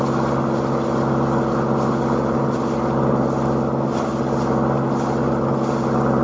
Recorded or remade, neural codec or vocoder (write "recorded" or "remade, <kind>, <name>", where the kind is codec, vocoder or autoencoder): recorded